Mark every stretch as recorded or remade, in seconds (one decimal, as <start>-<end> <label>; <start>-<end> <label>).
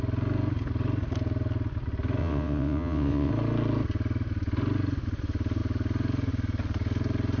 0.0-2.2 recorded; 2.2-3.3 remade; 3.3-7.4 recorded